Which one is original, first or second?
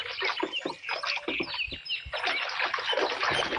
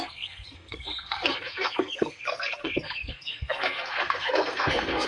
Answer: first